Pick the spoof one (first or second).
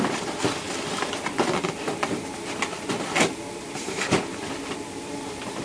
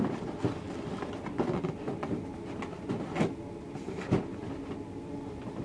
first